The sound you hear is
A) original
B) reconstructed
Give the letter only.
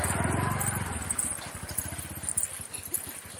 A